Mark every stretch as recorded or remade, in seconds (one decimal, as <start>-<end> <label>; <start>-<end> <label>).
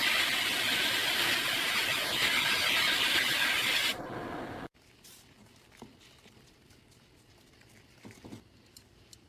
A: 0.0-9.3 recorded